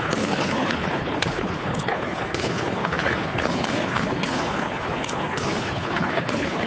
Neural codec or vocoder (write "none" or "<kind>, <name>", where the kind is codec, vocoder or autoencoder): codec, HILCodec